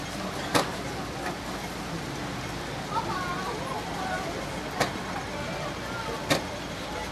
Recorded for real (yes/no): yes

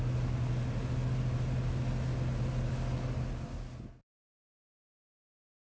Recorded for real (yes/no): yes